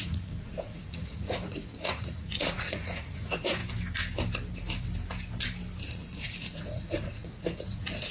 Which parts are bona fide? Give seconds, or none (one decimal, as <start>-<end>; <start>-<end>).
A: 3.6-5.8